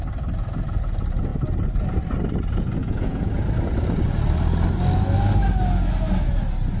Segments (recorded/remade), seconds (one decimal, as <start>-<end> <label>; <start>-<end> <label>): 0.0-2.8 recorded; 2.8-3.3 remade; 3.3-6.8 recorded